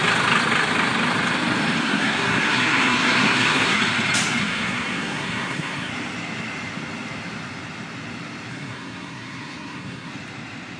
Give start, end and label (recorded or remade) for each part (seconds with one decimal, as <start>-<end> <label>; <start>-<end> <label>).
0.0-1.8 recorded; 1.8-3.8 remade; 3.8-4.4 recorded; 4.4-5.9 remade; 5.9-8.5 recorded; 8.5-10.1 remade; 10.1-10.8 recorded

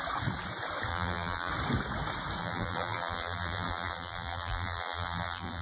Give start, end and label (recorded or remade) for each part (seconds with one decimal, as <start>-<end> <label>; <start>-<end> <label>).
0.0-0.9 recorded; 0.9-1.5 remade; 1.5-2.4 recorded; 2.4-5.6 remade

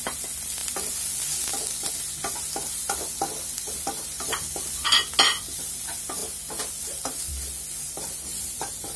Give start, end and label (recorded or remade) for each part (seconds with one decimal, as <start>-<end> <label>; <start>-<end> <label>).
0.0-9.0 recorded

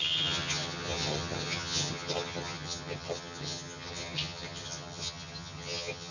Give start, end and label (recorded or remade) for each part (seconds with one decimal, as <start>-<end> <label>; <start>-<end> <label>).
0.0-6.1 remade